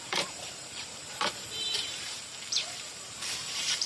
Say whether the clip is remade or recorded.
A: remade